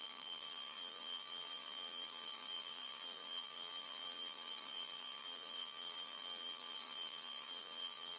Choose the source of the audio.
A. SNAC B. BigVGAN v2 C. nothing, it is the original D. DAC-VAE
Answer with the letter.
B